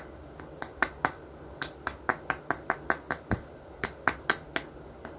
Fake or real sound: real